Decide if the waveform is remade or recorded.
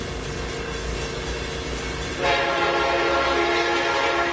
recorded